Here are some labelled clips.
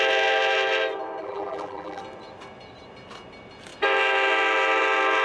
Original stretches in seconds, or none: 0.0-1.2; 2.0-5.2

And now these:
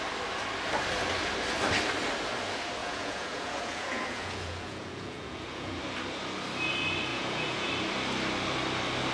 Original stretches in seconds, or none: 0.0-2.8; 5.8-7.1; 7.7-9.1

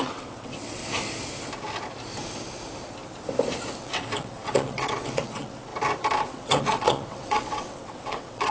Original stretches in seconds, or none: 0.8-3.8; 5.7-6.2

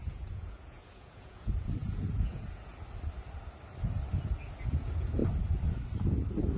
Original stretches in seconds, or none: 2.6-4.7; 5.2-6.6

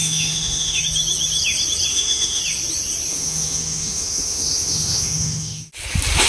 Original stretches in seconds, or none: 0.8-1.9; 2.4-3.1; 5.7-6.3

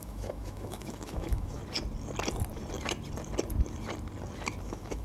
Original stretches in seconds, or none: 1.6-4.6

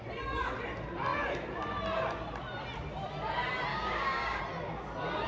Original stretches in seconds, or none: 0.0-3.7; 4.4-5.3